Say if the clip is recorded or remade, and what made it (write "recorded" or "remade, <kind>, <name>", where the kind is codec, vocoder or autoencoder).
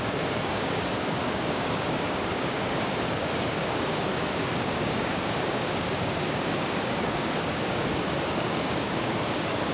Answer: remade, codec, DAC